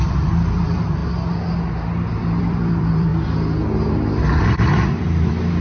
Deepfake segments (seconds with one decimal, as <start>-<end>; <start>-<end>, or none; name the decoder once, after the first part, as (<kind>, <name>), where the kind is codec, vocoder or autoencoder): 0.0-1.0 (vocoder, BigVGAN v2); 2.1-3.1; 4.4-5.6